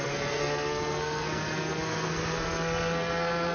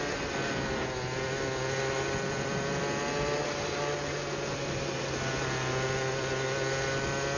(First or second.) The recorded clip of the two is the second